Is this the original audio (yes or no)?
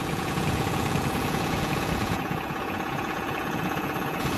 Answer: no